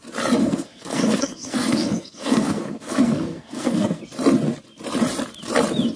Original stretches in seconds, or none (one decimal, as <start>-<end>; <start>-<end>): 0.0-0.4; 4.0-6.0